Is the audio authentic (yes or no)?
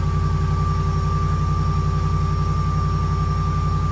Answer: yes